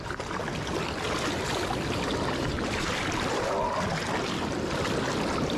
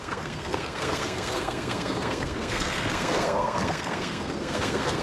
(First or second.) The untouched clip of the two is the first